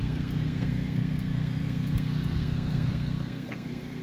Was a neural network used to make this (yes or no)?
yes